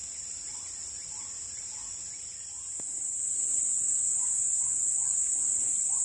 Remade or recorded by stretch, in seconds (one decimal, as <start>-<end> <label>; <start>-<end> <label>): 0.0-6.0 recorded